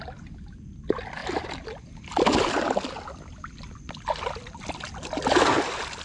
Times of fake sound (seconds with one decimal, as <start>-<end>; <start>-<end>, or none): none